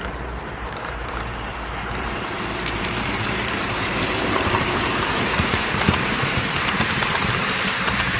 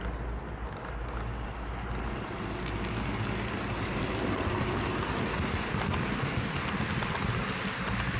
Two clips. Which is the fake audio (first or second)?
first